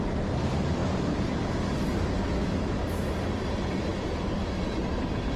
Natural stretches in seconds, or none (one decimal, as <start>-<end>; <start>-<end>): 0.0-3.9; 4.7-5.4